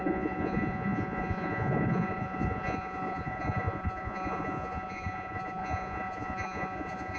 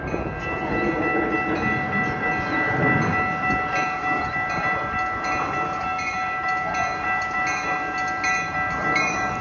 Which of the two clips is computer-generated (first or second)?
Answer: first